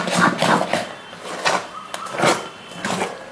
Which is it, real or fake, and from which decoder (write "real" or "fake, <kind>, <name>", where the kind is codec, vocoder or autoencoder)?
real